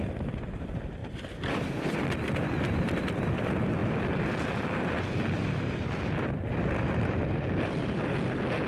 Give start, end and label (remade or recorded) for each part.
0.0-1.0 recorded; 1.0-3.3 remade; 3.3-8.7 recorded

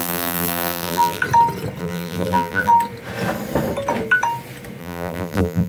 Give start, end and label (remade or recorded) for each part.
0.0-1.2 remade; 1.2-1.8 recorded; 1.8-2.7 remade; 2.7-4.8 recorded; 4.8-5.7 remade

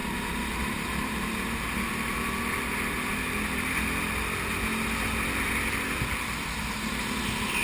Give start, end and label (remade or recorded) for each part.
0.0-7.6 recorded

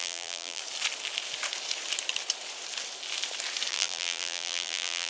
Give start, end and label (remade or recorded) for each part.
0.0-0.6 remade; 0.6-3.7 recorded; 3.7-5.1 remade

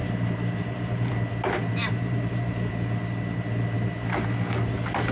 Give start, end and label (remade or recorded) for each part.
0.0-1.1 remade; 1.1-1.8 recorded; 1.8-2.7 remade; 2.7-5.1 recorded

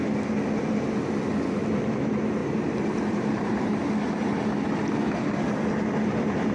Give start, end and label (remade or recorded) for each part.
0.0-2.4 recorded; 2.4-3.6 remade; 3.6-6.5 recorded

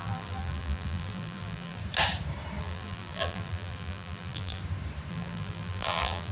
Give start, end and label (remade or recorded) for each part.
0.0-1.8 remade; 1.8-2.6 recorded; 2.6-4.6 remade; 4.6-5.1 recorded; 5.1-6.3 remade

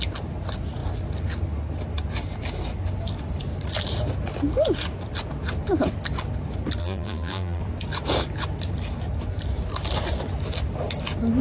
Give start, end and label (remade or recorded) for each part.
0.0-6.8 recorded; 6.8-7.6 remade; 7.6-11.4 recorded